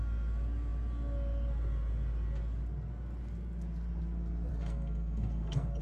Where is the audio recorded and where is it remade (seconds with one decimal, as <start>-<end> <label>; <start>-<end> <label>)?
0.0-4.5 recorded; 4.5-5.8 remade